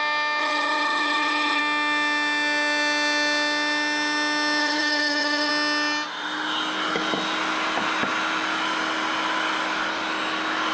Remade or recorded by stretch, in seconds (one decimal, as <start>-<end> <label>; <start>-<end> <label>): 0.0-0.4 recorded; 0.4-1.6 remade; 1.6-4.6 recorded; 4.6-5.5 remade; 5.5-10.7 recorded